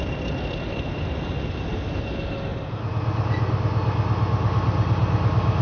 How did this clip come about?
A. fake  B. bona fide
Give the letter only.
B